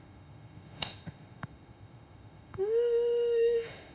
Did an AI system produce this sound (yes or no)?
yes